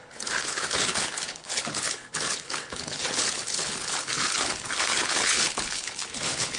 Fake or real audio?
fake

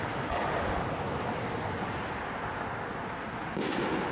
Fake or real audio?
real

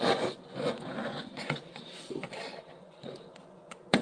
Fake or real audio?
fake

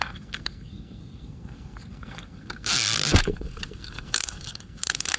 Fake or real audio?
fake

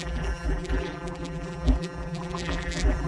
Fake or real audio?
fake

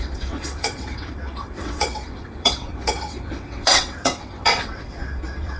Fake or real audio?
fake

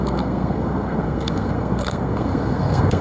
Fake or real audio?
fake